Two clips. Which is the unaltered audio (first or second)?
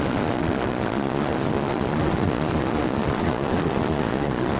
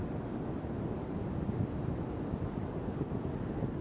second